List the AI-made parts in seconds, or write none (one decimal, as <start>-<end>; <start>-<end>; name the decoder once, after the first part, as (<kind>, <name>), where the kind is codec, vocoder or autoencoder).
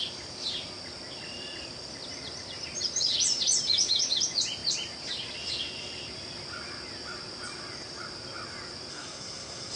8.9-9.8 (codec, SNAC)